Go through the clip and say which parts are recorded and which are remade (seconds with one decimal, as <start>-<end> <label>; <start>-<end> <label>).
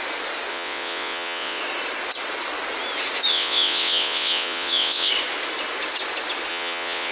0.0-0.5 recorded; 0.5-1.6 remade; 1.6-3.3 recorded; 3.3-5.1 remade; 5.1-6.5 recorded; 6.5-7.1 remade